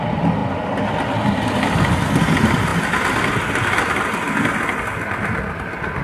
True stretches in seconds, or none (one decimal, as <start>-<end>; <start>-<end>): 0.0-6.0